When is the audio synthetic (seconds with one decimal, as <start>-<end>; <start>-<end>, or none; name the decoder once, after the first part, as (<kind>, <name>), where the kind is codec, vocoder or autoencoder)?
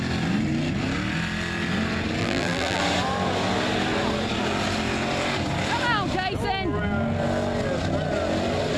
2.2-2.8 (vocoder, BigVGAN v2)